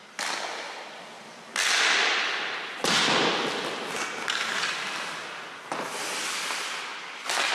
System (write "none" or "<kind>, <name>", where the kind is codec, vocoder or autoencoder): none